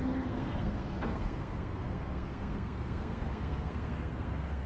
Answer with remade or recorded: remade